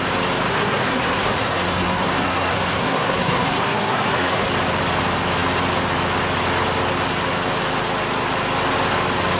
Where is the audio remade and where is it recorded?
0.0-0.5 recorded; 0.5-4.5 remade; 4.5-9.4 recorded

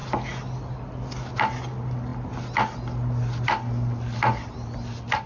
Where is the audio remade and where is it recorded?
0.0-5.3 recorded

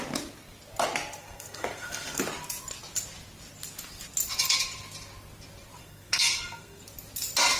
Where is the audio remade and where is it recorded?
0.0-1.2 recorded; 1.2-2.2 remade; 2.2-5.8 recorded; 5.8-6.8 remade; 6.8-7.6 recorded

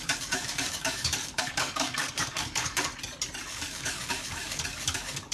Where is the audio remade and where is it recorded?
0.0-2.9 remade; 2.9-3.5 recorded; 3.5-5.3 remade

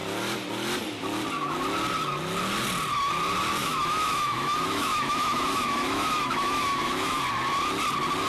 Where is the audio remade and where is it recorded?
0.0-3.6 recorded; 3.6-7.2 remade; 7.2-8.3 recorded

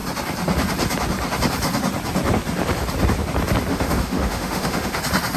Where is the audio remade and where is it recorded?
0.0-3.7 recorded; 3.7-5.0 remade; 5.0-5.4 recorded

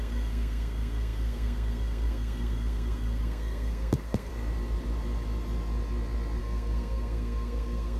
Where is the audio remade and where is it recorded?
0.0-4.3 remade; 4.3-6.4 recorded; 6.4-8.0 remade